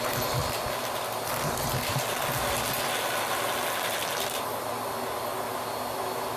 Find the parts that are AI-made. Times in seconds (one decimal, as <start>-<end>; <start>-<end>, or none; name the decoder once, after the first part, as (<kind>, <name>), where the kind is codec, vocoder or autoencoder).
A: none